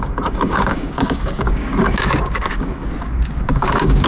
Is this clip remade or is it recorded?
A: remade